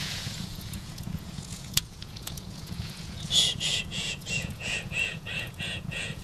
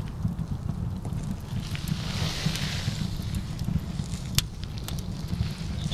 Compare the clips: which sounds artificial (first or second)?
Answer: first